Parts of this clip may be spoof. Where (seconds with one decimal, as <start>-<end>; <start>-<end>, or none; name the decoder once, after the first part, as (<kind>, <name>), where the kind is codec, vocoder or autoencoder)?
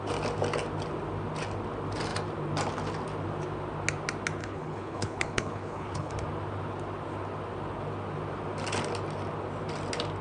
4.4-6.1 (codec, HILCodec)